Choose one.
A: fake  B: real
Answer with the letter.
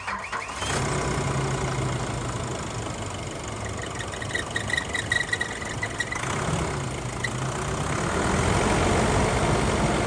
B